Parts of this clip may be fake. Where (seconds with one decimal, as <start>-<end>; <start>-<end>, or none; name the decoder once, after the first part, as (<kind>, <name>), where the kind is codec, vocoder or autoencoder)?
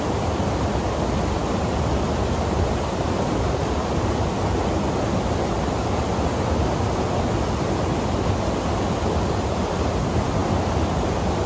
none